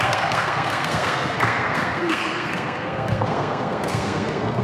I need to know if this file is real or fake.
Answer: fake